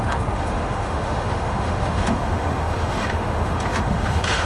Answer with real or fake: fake